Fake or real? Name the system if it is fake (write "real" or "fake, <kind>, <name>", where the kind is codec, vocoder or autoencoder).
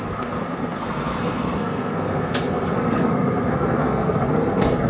fake, codec, SNAC